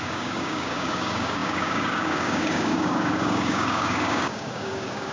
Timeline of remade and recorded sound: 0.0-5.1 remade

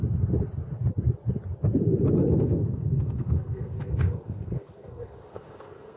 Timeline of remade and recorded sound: 0.0-2.2 recorded; 2.2-6.0 remade

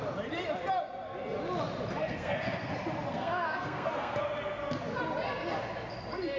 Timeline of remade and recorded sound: 0.0-2.0 recorded; 2.0-2.7 remade; 2.7-3.1 recorded; 3.1-4.2 remade; 4.2-6.4 recorded

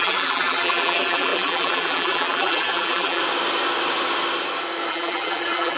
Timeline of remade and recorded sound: 0.0-3.2 remade; 3.2-4.9 recorded; 4.9-5.8 remade

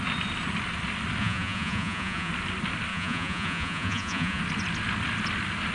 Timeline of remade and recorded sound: 0.0-1.2 recorded; 1.2-2.3 remade; 2.3-2.9 recorded; 2.9-4.4 remade; 4.4-5.7 recorded

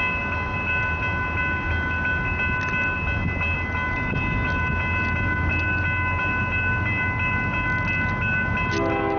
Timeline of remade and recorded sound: 0.0-9.2 recorded